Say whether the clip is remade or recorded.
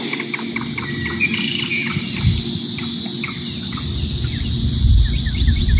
recorded